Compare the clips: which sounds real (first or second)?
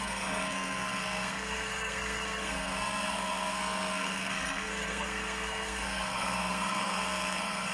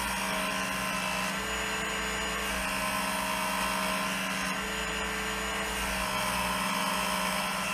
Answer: second